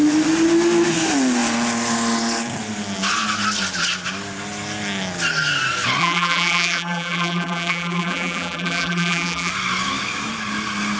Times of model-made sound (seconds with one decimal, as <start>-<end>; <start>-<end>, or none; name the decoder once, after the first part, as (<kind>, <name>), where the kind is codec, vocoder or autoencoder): 6.0-9.5 (vocoder, BigVGAN v2)